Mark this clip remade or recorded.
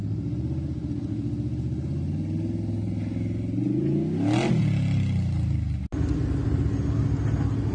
recorded